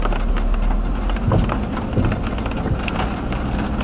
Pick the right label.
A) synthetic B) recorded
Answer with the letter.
B